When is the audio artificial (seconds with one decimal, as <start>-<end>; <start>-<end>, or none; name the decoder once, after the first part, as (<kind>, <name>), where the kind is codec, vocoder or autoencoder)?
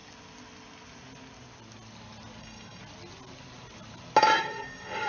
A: 2.4-2.8 (codec, DAC); 4.2-5.1